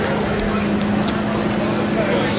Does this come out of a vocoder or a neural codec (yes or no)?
no